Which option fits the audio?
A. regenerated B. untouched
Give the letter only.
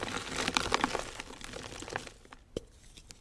B